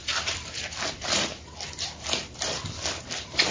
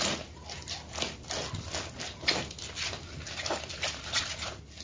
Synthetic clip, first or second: first